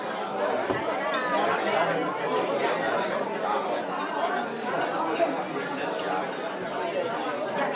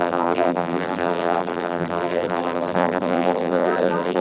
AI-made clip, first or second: second